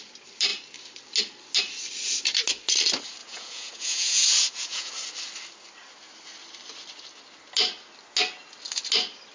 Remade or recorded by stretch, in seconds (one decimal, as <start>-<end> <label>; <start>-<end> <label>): 0.0-3.2 recorded; 3.2-4.9 remade; 4.9-9.3 recorded